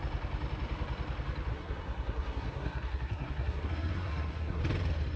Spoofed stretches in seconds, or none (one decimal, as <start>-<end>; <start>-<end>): 1.5-4.6